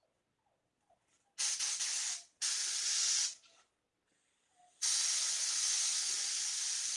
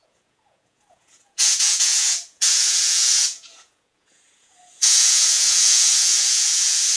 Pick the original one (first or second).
first